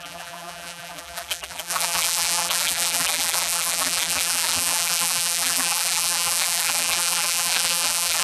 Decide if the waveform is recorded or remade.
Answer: remade